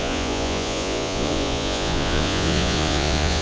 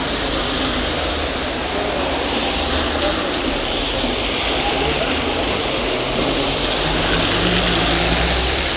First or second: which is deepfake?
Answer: first